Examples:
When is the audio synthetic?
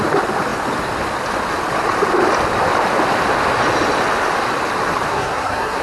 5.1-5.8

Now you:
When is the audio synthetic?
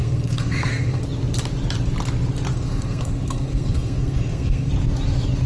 0.0-1.0; 2.5-4.7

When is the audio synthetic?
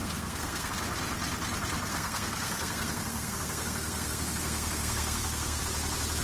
0.0-0.7; 1.9-5.6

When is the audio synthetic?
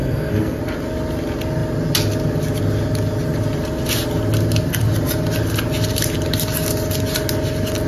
0.0-0.6